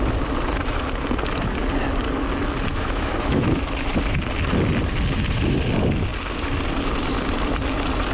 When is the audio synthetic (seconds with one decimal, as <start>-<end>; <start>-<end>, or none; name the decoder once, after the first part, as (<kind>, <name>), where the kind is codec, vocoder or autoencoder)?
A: 2.7-3.5 (autoencoder, DAC-VAE)